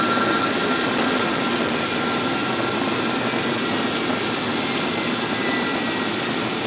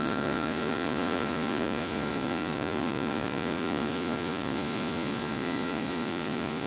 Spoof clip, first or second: second